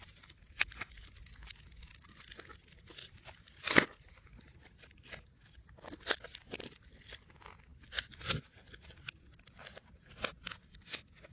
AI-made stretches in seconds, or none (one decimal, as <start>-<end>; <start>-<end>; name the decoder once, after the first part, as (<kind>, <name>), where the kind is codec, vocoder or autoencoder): none

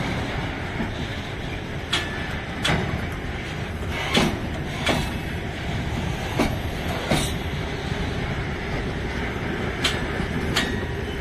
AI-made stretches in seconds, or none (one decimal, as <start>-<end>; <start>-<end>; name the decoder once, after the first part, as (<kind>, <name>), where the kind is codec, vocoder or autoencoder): 1.1-1.6 (vocoder, BigVGAN v2)

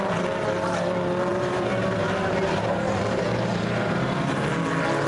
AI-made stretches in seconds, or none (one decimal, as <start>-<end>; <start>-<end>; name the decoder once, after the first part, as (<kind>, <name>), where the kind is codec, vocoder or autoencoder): 1.3-4.4 (vocoder, BigVGAN v2)

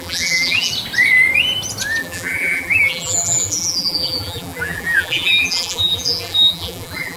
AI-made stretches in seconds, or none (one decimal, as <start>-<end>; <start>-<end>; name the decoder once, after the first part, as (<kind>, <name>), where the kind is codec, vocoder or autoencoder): 0.0-0.7 (vocoder, BigVGAN v2); 2.0-7.2

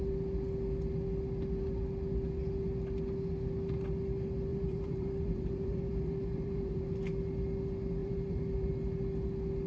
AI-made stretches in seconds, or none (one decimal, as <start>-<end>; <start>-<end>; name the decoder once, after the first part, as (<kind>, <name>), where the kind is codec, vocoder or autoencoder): 4.5-6.8 (vocoder, BigVGAN v2); 8.0-8.7

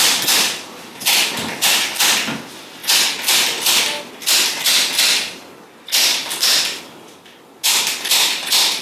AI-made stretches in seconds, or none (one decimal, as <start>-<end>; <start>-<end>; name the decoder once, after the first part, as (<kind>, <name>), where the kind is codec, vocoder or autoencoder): 6.1-6.8 (vocoder, BigVGAN v2)

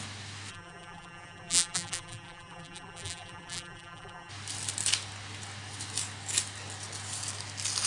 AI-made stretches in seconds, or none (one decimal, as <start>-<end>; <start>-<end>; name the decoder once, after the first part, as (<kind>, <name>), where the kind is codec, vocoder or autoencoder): 0.5-4.3 (vocoder, BigVGAN v2)

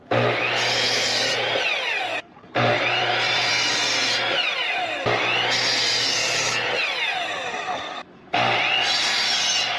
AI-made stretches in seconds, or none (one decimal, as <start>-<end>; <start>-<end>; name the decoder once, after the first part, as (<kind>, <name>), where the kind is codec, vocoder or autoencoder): 1.0-3.5 (vocoder, BigVGAN v2)